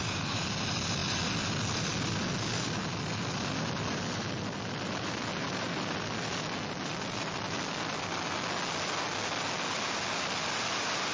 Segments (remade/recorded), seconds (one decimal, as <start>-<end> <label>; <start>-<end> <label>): 0.0-11.1 recorded

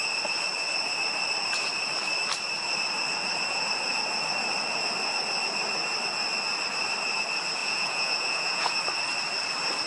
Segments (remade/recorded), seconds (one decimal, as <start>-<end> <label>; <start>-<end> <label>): 0.0-7.6 recorded; 7.6-8.8 remade; 8.8-9.9 recorded

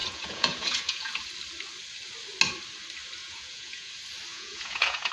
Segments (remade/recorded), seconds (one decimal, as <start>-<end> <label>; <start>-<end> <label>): 0.0-1.3 remade; 1.3-3.2 recorded; 3.2-3.9 remade; 3.9-4.3 recorded; 4.3-5.1 remade

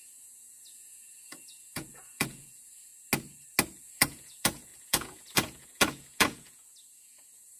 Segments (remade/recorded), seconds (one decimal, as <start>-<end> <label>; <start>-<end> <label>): 0.0-2.9 remade; 2.9-3.8 recorded; 3.8-7.6 remade

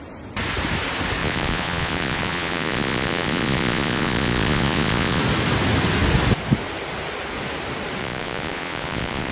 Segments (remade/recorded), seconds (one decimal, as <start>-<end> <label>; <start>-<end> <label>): 0.0-1.2 recorded; 1.2-5.2 remade; 5.2-8.0 recorded; 8.0-9.3 remade

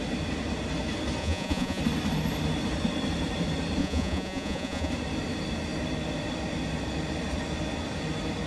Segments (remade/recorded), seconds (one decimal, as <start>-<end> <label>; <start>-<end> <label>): 0.0-1.2 recorded; 1.2-1.8 remade; 1.8-3.8 recorded; 3.8-4.9 remade; 4.9-8.5 recorded

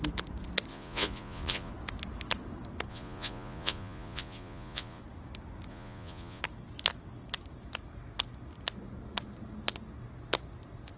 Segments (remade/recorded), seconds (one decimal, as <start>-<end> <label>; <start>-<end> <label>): 0.0-0.7 recorded; 0.7-1.7 remade; 1.7-2.9 recorded; 2.9-5.0 remade; 5.0-5.7 recorded; 5.7-6.4 remade; 6.4-11.0 recorded

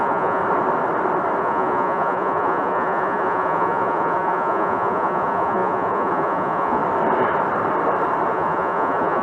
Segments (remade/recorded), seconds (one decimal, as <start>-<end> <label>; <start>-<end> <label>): 0.0-0.4 remade; 0.4-1.4 recorded; 1.4-6.8 remade; 6.8-8.3 recorded; 8.3-9.2 remade